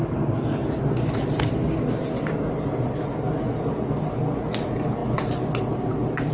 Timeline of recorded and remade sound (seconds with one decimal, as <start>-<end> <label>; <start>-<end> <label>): 0.0-6.3 recorded